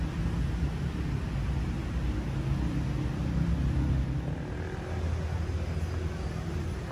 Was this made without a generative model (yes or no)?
yes